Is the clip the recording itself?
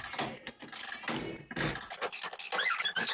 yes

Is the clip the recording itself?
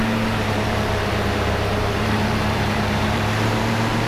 no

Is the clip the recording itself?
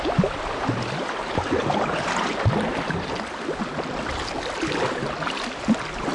yes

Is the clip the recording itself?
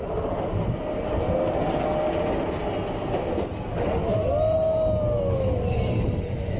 yes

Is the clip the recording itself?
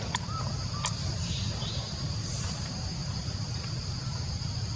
no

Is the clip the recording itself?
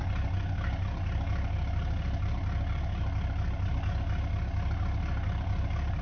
yes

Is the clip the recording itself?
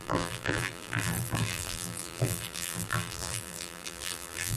no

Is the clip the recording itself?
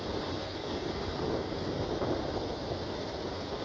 yes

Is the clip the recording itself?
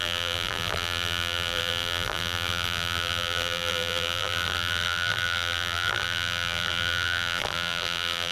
no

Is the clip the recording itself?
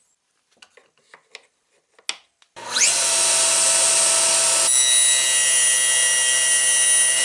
yes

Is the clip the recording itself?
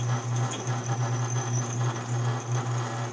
yes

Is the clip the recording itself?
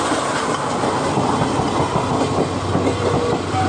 yes